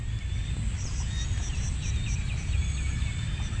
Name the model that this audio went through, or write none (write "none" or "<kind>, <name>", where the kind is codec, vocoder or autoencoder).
none